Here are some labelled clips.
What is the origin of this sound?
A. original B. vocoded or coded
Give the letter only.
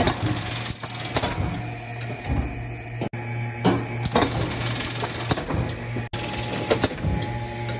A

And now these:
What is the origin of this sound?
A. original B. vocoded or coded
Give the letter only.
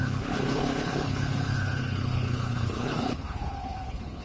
B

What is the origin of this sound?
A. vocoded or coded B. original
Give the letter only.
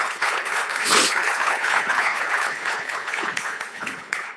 A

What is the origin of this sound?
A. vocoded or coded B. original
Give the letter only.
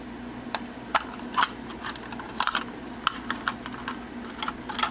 B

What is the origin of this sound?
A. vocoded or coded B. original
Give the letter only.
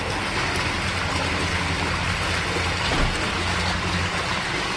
B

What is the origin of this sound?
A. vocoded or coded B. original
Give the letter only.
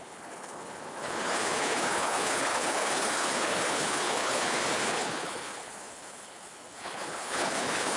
A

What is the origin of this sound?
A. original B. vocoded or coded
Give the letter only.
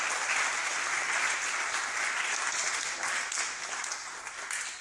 A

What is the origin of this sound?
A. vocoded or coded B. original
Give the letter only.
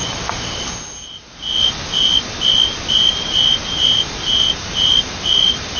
B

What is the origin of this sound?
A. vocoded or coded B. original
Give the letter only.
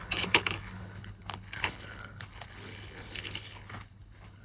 A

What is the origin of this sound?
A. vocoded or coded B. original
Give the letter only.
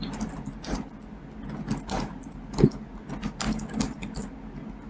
B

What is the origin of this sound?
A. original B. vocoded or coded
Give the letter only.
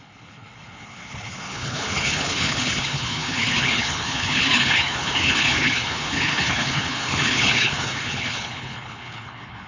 B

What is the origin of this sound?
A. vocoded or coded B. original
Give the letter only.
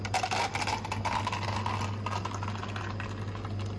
B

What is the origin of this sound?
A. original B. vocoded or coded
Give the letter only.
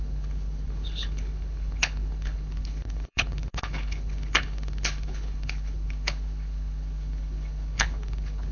B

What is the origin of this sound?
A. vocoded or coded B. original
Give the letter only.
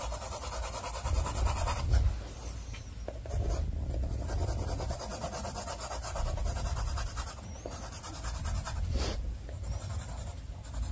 B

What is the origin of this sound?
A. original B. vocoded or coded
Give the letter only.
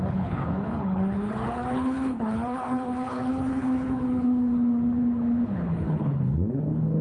B